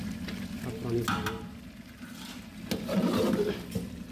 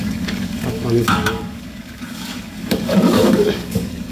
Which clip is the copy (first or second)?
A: second